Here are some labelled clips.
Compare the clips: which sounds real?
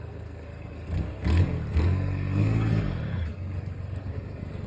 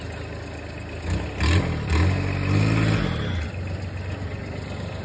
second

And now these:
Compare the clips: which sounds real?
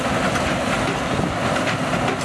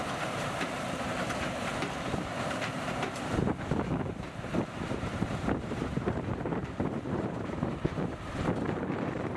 first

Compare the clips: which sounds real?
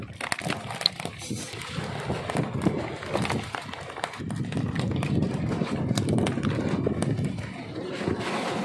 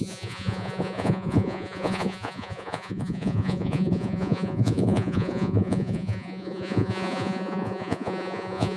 first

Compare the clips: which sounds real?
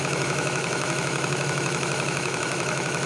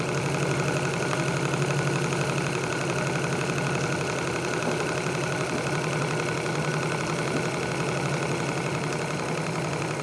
second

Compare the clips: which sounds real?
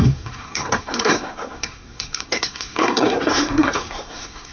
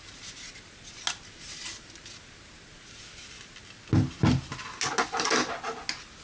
second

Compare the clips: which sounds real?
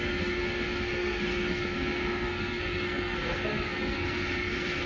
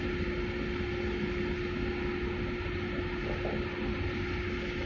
second